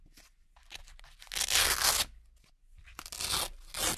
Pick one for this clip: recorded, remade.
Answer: recorded